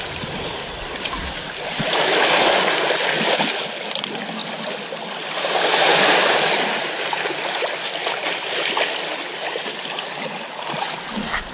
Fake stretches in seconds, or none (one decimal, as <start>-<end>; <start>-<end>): none